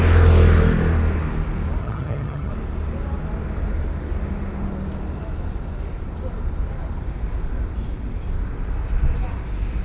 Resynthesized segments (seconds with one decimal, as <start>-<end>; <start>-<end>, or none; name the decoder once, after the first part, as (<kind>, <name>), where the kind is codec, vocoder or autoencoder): 1.8-2.5 (vocoder, HiFi-GAN)